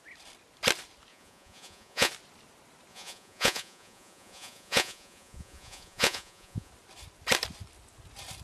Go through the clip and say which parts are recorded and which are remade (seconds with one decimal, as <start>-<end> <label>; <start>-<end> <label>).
0.0-1.1 recorded; 1.1-2.1 remade; 2.1-2.9 recorded; 2.9-6.7 remade; 6.7-8.4 recorded